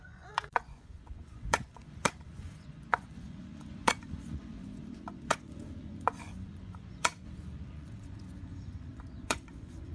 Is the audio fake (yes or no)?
yes